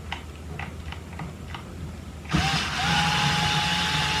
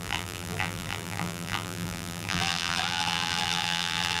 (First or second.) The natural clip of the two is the first